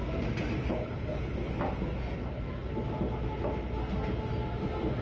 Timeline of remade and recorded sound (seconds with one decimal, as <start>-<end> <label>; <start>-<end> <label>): 0.0-0.6 recorded; 0.6-1.5 remade; 1.5-5.0 recorded